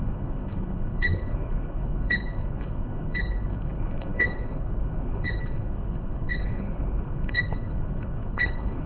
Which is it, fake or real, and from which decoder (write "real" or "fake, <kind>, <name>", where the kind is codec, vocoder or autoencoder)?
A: fake, codec, HILCodec